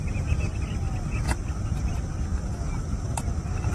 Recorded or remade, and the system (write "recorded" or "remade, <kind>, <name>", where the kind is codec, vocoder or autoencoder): recorded